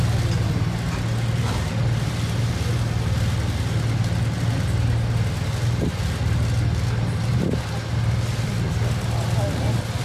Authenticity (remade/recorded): recorded